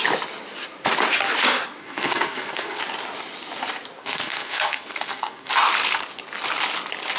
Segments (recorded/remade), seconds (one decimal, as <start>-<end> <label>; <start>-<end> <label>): 0.0-1.8 recorded; 1.8-2.8 remade; 2.8-4.0 recorded; 4.0-5.5 remade; 5.5-7.2 recorded